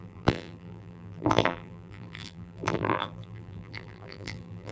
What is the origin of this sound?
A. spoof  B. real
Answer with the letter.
A